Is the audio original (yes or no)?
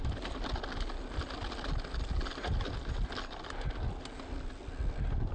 yes